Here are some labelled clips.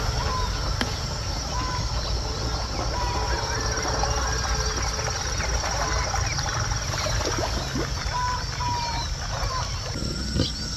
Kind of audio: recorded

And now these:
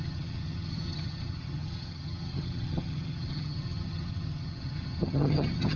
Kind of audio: remade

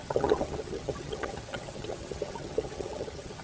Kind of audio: remade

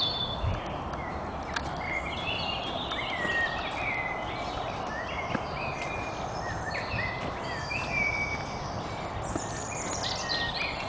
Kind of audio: recorded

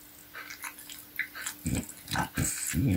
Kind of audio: recorded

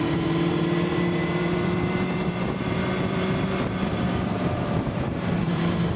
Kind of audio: remade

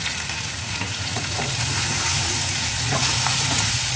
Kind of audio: remade